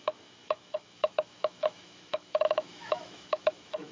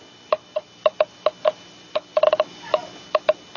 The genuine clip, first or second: second